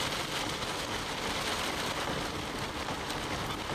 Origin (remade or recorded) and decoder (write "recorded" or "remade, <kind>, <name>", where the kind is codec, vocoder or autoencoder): recorded